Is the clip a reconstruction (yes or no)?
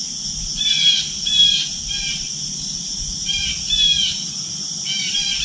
no